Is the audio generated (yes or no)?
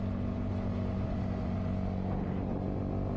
no